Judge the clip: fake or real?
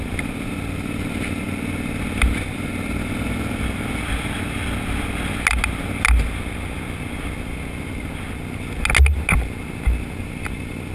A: real